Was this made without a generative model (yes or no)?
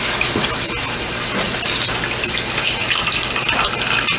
yes